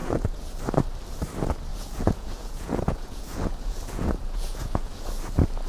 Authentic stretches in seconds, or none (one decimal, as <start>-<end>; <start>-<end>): 0.6-1.7; 5.1-5.7